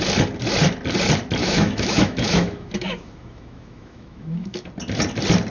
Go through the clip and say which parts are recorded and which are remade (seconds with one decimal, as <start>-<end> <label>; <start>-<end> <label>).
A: 0.0-1.4 recorded; 1.4-4.7 remade; 4.7-5.5 recorded